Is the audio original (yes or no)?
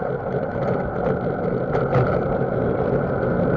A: yes